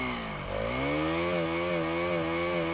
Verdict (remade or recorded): recorded